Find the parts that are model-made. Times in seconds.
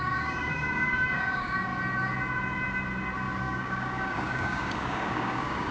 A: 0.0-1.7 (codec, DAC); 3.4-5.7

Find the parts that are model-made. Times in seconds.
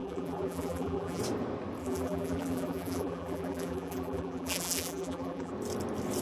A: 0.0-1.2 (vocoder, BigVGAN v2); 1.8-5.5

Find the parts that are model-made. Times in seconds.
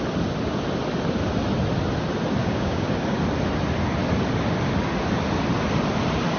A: 2.4-2.9 (codec, DAC)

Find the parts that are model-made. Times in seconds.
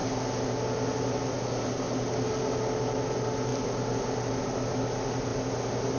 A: none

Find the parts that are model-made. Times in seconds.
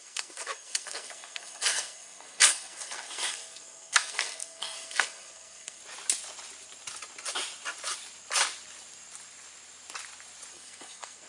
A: 0.0-5.8 (codec, SNAC); 10.5-11.3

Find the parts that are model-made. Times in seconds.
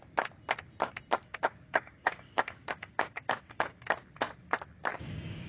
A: 1.2-3.9 (codec, DAC); 4.9-5.5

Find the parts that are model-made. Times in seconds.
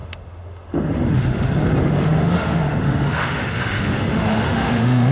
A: 0.0-1.4 (autoencoder, DAC-VAE); 1.8-5.1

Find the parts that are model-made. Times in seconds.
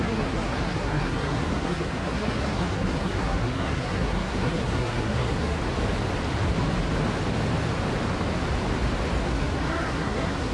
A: 0.0-5.6 (codec, SNAC); 9.2-10.5